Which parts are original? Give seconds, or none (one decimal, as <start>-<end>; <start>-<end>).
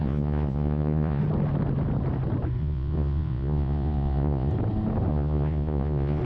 1.2-2.6; 4.5-5.1